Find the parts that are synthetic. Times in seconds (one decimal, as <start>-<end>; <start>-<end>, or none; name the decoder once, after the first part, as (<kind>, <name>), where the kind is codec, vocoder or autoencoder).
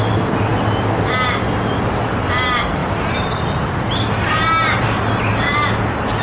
none